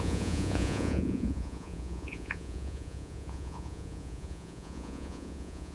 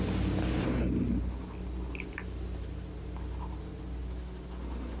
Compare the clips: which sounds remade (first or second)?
first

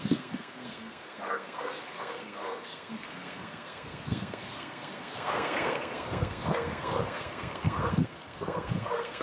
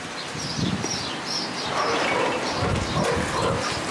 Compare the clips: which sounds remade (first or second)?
first